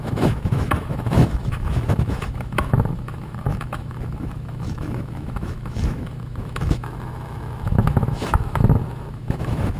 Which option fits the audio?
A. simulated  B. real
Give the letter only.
A